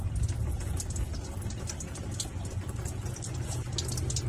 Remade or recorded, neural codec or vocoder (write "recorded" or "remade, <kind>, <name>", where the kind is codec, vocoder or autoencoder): recorded